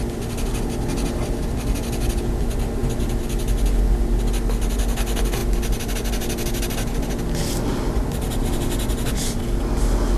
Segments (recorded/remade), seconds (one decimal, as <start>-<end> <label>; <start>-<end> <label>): 0.0-10.2 recorded